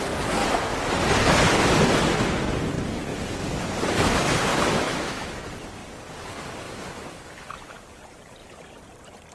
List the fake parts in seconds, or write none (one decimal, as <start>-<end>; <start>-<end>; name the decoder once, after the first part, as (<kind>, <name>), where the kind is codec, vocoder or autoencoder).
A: 4.5-5.3 (autoencoder, DAC-VAE)

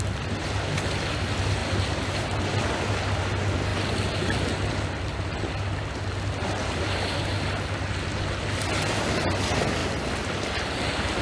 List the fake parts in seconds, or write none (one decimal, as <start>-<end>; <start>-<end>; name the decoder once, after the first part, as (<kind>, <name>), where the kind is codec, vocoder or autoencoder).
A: none